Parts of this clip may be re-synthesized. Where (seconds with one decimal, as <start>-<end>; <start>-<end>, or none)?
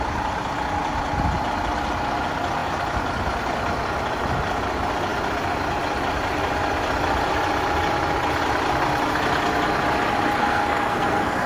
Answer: 10.4-11.5